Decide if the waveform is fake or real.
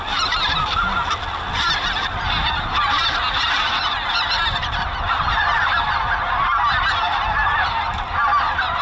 real